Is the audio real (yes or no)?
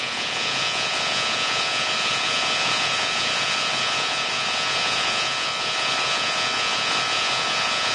no